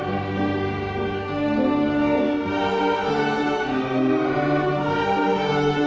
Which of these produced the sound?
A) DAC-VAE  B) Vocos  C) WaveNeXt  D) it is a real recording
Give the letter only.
D